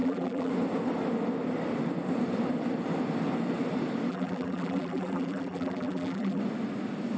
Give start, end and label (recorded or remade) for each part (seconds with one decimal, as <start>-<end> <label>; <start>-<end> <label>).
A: 0.0-0.5 remade; 0.5-4.1 recorded; 4.1-6.4 remade; 6.4-7.2 recorded